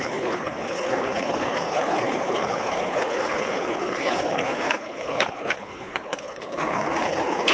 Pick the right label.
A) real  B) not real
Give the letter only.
B